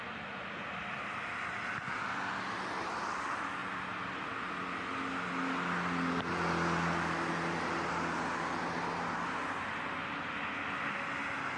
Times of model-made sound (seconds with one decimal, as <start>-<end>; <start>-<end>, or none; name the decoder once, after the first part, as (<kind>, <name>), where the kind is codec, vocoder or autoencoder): none